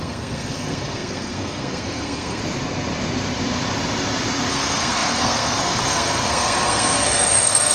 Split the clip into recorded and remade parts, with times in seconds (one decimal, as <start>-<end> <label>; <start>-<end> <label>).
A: 0.0-2.4 remade; 2.4-4.5 recorded; 4.5-7.7 remade